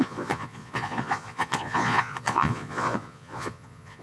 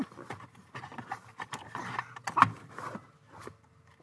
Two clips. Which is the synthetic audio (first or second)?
first